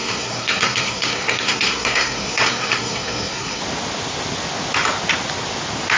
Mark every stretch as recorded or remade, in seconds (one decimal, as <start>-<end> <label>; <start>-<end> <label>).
0.0-3.6 remade; 3.6-6.0 recorded